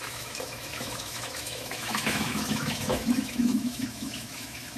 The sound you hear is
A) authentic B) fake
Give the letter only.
B